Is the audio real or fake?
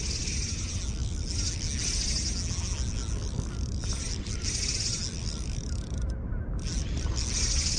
real